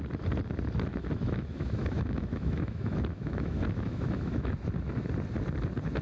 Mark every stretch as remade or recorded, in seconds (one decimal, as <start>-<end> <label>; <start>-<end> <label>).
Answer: 0.0-0.9 recorded; 0.9-4.5 remade; 4.5-6.0 recorded

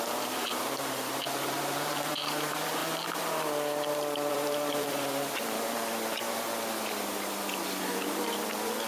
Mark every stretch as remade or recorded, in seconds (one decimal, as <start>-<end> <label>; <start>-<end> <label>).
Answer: 0.0-2.8 remade; 2.8-4.3 recorded; 4.3-6.5 remade; 6.5-8.9 recorded

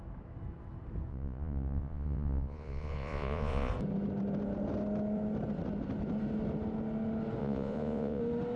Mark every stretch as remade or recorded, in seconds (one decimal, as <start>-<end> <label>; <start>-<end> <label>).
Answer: 0.0-1.1 recorded; 1.1-3.7 remade; 3.7-7.4 recorded; 7.4-8.2 remade; 8.2-8.6 recorded